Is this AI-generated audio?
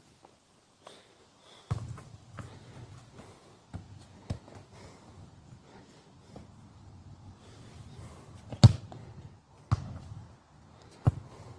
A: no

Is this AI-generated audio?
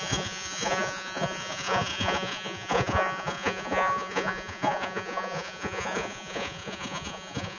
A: yes